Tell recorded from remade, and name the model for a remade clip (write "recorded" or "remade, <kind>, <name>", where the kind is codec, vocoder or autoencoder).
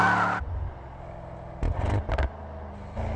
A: recorded